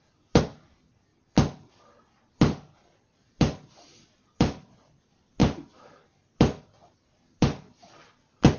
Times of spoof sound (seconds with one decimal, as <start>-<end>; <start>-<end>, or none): none